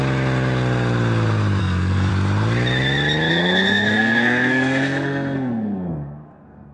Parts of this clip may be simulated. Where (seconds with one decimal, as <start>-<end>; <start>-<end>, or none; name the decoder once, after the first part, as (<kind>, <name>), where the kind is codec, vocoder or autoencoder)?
1.6-2.1 (codec, SNAC); 3.3-6.7